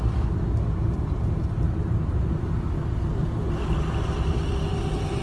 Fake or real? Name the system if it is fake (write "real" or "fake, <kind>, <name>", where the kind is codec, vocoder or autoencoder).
real